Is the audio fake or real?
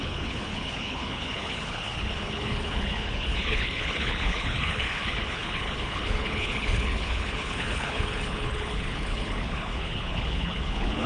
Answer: fake